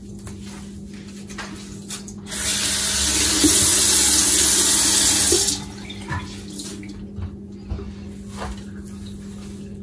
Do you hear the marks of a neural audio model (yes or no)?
no